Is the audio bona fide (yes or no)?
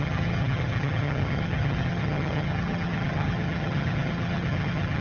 no